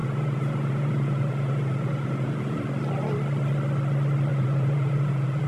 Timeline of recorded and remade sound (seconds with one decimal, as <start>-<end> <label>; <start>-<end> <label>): 0.0-2.7 remade; 2.7-4.3 recorded; 4.3-5.5 remade